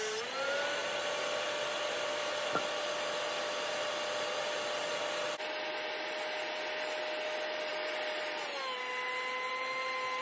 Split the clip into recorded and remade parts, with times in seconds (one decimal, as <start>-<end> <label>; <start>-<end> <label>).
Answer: 0.0-10.2 recorded